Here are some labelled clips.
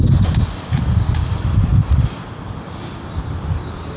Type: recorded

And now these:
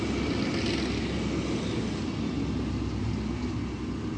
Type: recorded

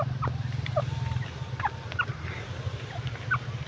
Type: recorded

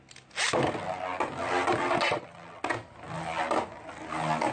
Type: recorded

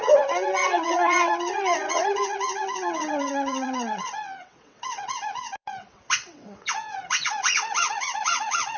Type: remade